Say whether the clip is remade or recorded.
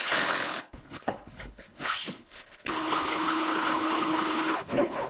remade